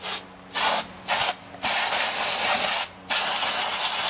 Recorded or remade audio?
recorded